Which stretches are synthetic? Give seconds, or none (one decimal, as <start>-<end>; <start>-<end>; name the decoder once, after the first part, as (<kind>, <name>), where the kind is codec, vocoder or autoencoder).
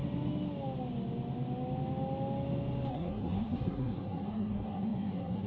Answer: 2.9-5.5 (codec, SNAC)